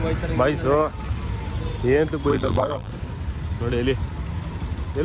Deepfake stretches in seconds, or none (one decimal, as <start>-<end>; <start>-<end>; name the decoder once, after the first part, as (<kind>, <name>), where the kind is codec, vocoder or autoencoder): 2.3-2.9 (vocoder, BigVGAN v2)